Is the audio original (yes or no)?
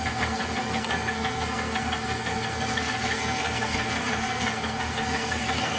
no